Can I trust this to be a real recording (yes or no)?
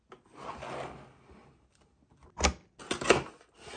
yes